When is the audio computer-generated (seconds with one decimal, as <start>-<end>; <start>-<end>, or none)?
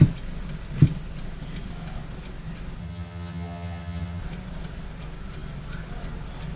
2.8-4.2